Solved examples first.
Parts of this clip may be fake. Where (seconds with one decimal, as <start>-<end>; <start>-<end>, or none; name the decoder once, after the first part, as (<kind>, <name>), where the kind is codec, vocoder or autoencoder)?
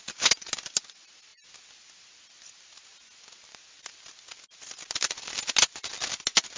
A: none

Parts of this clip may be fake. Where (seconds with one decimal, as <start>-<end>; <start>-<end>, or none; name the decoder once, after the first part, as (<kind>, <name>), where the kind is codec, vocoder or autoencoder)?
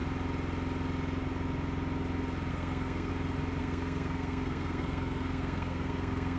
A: 2.5-3.1 (codec, SNAC); 3.6-6.4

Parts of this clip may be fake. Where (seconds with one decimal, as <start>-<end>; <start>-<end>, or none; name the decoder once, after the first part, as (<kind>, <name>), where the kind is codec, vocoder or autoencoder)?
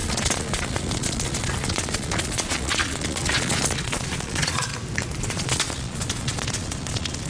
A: 0.0-4.7 (vocoder, Vocos); 5.2-7.3